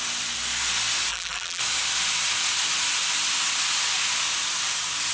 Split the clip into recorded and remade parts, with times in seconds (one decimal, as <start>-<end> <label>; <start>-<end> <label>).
0.0-1.1 recorded; 1.1-1.6 remade; 1.6-5.1 recorded

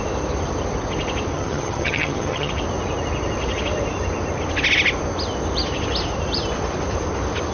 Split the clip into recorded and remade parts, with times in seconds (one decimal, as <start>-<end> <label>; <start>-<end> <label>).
0.0-1.3 recorded; 1.3-2.5 remade; 2.5-7.5 recorded

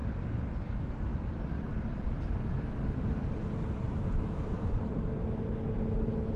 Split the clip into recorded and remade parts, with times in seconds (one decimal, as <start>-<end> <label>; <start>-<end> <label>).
0.0-1.1 recorded; 1.1-4.9 remade; 4.9-6.4 recorded

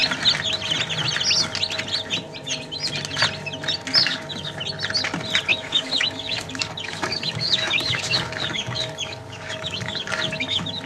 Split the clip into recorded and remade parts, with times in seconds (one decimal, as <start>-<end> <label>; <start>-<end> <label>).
0.0-4.0 recorded; 4.0-4.5 remade; 4.5-5.5 recorded; 5.5-10.9 remade

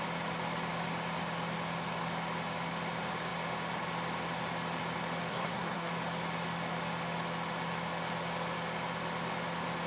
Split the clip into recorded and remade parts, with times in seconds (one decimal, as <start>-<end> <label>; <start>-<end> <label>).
0.0-5.3 recorded; 5.3-5.9 remade; 5.9-9.9 recorded

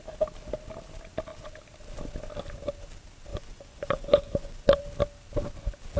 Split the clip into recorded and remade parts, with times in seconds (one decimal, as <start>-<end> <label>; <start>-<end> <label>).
0.0-3.3 recorded; 3.3-4.8 remade; 4.8-6.0 recorded